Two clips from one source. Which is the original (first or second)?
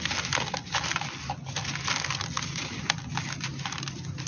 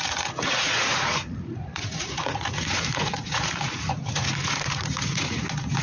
first